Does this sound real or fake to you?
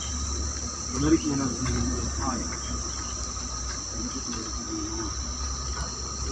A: fake